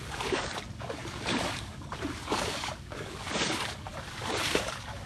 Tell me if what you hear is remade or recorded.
remade